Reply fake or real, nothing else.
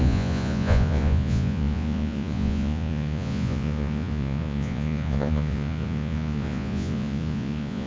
fake